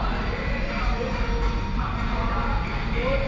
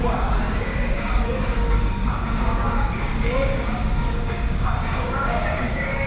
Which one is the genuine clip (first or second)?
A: first